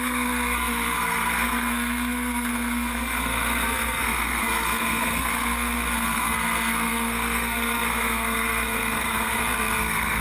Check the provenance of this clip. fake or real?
fake